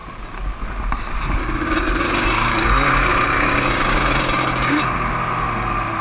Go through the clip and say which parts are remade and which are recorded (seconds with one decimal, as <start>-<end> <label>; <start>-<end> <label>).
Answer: 0.0-1.4 recorded; 1.4-2.7 remade; 2.7-3.1 recorded; 3.1-4.8 remade; 4.8-6.0 recorded